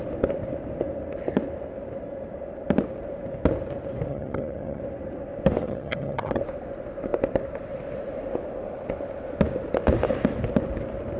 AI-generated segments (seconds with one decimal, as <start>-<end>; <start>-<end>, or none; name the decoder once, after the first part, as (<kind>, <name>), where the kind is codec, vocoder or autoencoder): 4.1-4.8 (vocoder, HiFi-GAN); 5.6-6.4